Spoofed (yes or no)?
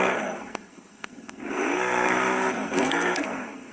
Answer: yes